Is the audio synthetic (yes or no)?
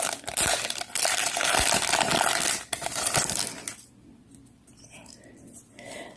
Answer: no